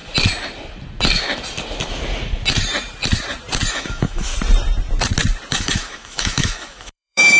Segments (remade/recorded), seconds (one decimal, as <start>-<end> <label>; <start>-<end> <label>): 0.0-3.7 recorded; 3.7-4.3 remade; 4.3-5.5 recorded; 5.5-7.4 remade